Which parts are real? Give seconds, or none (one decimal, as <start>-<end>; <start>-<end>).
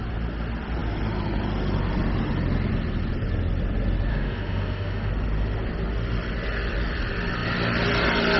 0.0-4.1; 5.1-8.4